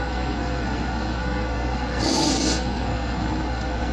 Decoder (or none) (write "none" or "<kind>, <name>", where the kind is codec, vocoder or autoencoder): codec, SNAC